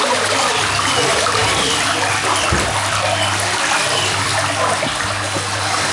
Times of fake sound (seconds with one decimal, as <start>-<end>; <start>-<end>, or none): none